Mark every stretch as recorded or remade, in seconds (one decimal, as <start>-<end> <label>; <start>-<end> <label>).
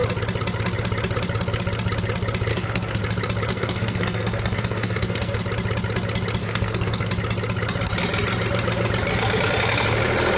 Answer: 0.0-2.5 recorded; 2.5-3.0 remade; 3.0-3.5 recorded; 3.5-5.4 remade; 5.4-6.4 recorded; 6.4-7.1 remade; 7.1-10.4 recorded